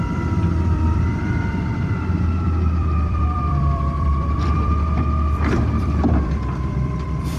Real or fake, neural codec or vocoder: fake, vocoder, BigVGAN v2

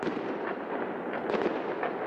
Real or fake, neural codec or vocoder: real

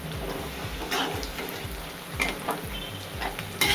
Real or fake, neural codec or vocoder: real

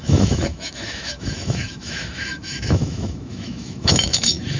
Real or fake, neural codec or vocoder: fake, autoencoder, DAC-VAE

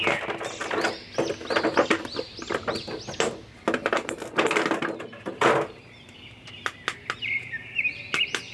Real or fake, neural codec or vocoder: real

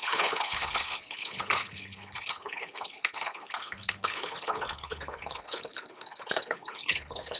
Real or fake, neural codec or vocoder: fake, codec, HILCodec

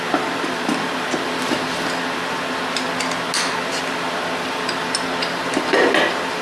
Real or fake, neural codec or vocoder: real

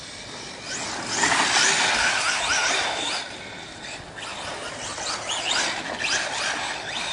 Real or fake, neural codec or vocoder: real